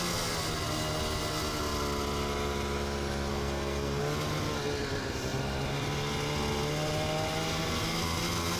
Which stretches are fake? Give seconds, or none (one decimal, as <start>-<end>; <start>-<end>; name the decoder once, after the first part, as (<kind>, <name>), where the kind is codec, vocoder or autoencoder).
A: 3.3-4.0 (codec, SNAC)